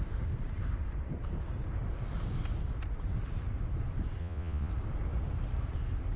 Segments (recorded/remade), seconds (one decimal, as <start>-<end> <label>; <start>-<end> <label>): 0.0-4.2 recorded; 4.2-4.7 remade; 4.7-6.2 recorded